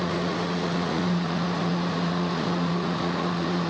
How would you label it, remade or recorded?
remade